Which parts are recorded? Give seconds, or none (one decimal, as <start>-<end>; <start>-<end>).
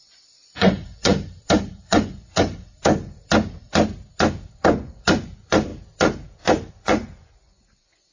1.1-1.7; 2.7-4.5; 5.7-6.7